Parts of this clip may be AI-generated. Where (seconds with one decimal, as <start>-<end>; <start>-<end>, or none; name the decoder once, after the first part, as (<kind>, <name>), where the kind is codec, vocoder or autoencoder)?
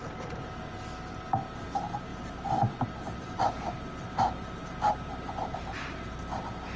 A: 2.1-6.2 (vocoder, BigVGAN v2)